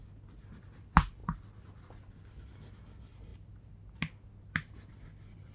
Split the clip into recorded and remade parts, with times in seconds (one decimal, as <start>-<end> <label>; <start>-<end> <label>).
0.0-5.5 recorded